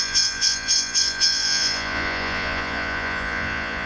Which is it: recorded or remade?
remade